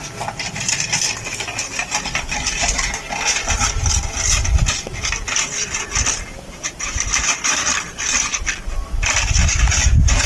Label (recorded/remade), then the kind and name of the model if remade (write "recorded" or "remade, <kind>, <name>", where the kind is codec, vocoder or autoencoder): recorded